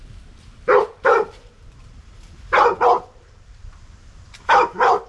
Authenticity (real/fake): fake